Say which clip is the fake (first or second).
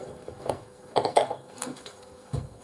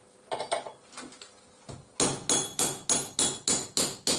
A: first